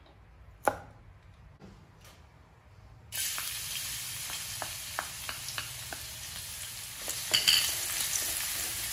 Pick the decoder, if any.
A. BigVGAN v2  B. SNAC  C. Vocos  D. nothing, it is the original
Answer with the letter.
D